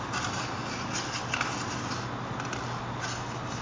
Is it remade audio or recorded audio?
recorded